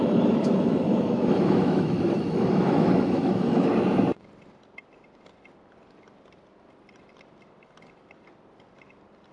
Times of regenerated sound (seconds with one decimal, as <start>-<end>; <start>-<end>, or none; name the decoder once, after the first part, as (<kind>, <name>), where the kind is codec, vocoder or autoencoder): 0.0-3.7 (autoencoder, DAC-VAE)